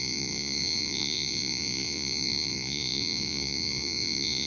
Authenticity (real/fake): fake